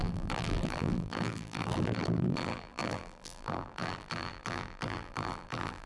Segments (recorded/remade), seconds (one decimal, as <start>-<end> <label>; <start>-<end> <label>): 0.0-5.9 remade